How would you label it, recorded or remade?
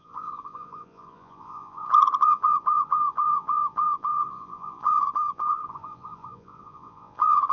remade